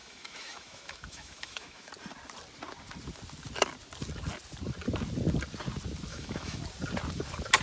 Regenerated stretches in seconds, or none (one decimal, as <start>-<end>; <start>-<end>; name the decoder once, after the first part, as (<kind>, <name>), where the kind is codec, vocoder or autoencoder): 0.0-1.9 (autoencoder, DAC-VAE); 6.1-6.6